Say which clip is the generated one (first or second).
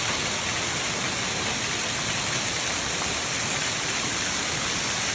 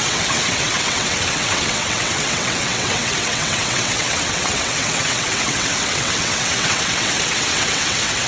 second